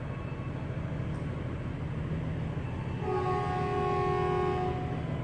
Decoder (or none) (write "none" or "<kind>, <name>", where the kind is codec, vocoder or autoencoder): none